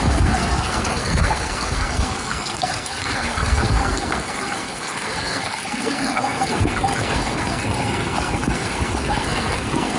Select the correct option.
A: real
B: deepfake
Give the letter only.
B